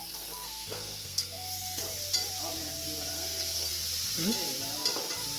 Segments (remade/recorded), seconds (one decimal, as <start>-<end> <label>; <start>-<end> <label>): 0.0-1.8 remade; 1.8-3.1 recorded; 3.1-3.7 remade; 3.7-5.4 recorded